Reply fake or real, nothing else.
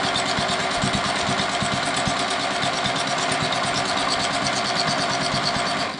real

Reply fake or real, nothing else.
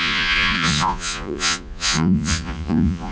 fake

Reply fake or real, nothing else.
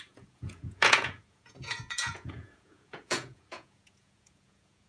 fake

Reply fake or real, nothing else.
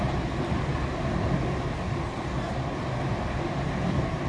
real